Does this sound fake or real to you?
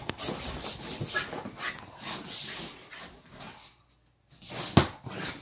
real